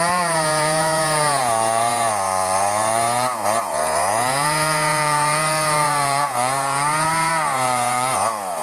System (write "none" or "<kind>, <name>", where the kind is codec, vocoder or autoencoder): vocoder, Vocos